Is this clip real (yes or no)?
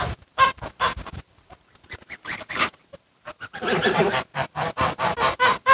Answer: no